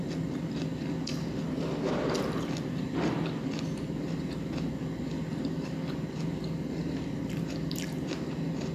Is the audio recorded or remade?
remade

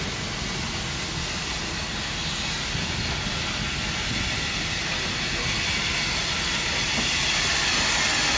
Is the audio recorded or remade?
recorded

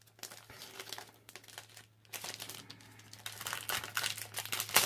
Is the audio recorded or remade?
recorded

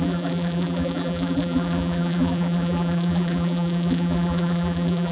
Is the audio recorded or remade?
remade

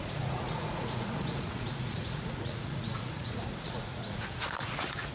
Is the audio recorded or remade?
remade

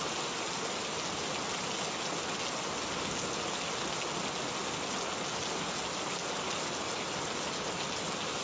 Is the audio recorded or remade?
recorded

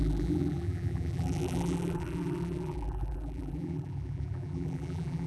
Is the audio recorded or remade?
remade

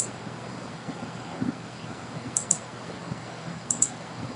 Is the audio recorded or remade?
remade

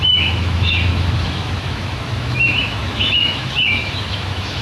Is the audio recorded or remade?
remade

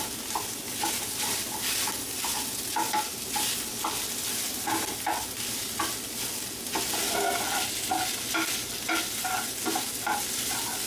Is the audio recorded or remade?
recorded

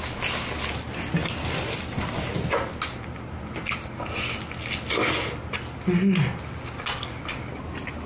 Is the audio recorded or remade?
recorded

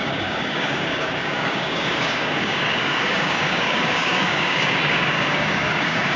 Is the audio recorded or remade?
remade